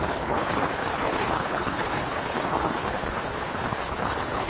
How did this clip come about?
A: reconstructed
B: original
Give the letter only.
A